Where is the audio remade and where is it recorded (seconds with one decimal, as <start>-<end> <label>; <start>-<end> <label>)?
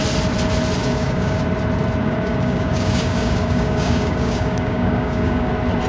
0.0-0.8 recorded; 0.8-1.4 remade; 1.4-2.0 recorded; 2.0-5.5 remade; 5.5-5.9 recorded